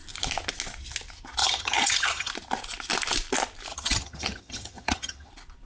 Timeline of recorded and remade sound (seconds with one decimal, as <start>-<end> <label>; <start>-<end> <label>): 0.0-1.4 recorded; 1.4-2.3 remade; 2.3-3.7 recorded; 3.7-5.3 remade; 5.3-5.7 recorded